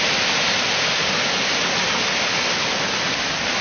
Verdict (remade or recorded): recorded